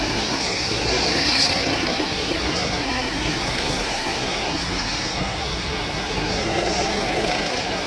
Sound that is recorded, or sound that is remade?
remade